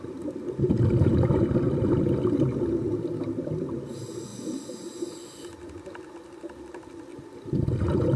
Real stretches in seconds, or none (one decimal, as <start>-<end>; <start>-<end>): 0.0-8.2